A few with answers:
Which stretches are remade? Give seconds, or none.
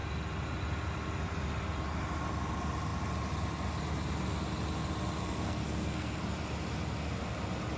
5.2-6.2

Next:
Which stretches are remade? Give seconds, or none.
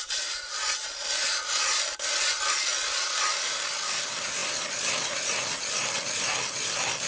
none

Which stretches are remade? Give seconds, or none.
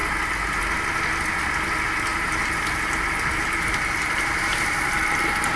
2.1-3.6; 4.0-4.6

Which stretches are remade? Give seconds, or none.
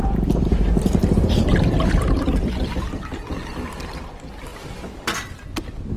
0.0-3.1; 4.0-4.5; 5.5-6.0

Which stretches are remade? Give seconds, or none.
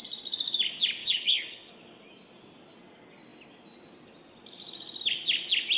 1.0-1.7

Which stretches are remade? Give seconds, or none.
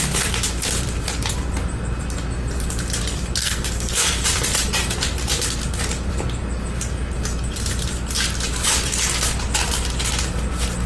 3.4-4.2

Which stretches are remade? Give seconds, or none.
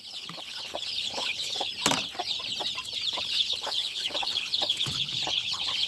0.0-1.7; 3.1-5.9